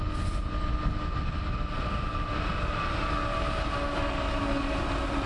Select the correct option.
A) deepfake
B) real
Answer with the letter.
B